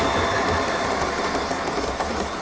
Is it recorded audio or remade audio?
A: recorded